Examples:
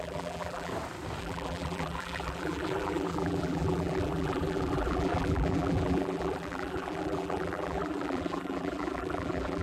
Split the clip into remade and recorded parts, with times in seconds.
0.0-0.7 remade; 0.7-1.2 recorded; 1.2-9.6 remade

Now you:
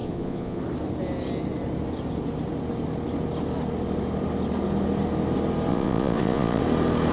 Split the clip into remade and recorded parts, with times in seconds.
0.0-0.6 remade; 0.6-5.7 recorded; 5.7-6.6 remade; 6.6-7.1 recorded

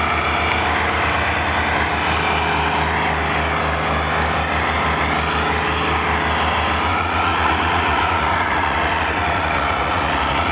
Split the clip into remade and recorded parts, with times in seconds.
0.0-6.9 recorded; 6.9-10.5 remade

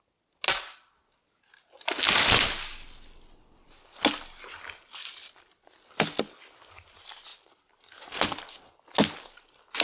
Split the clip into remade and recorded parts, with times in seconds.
0.0-7.3 recorded; 7.3-8.5 remade; 8.5-9.8 recorded